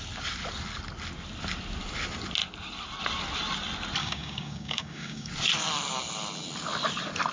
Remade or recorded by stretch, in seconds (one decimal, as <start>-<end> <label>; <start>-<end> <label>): 0.0-4.0 recorded; 4.0-5.3 remade; 5.3-7.3 recorded